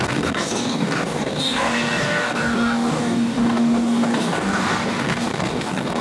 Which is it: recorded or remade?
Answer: remade